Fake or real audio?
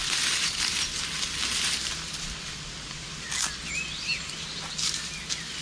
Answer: real